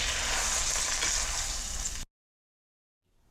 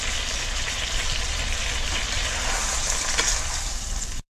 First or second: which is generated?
second